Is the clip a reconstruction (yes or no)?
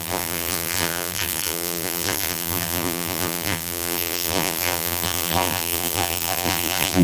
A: yes